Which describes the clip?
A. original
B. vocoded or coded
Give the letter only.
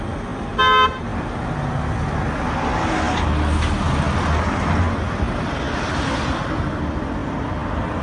A